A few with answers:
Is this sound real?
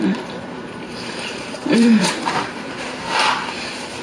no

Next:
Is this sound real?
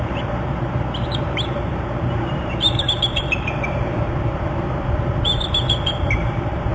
no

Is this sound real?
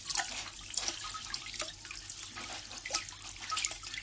yes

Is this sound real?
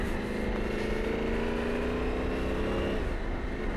yes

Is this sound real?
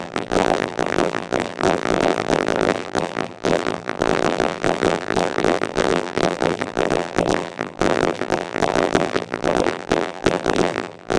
no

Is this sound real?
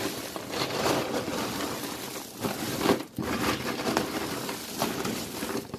yes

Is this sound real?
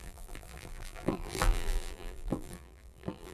no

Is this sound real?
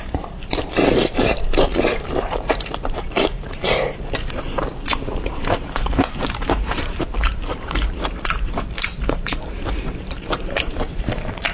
no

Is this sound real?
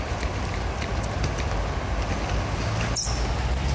yes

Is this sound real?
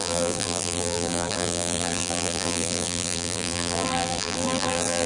no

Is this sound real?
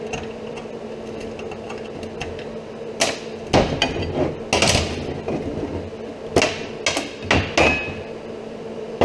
yes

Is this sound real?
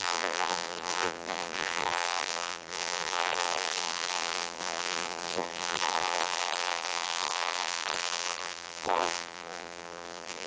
no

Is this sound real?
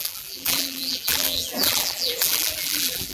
no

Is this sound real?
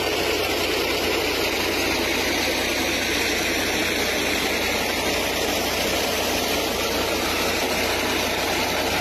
yes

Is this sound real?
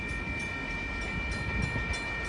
yes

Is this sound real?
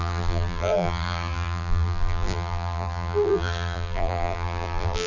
no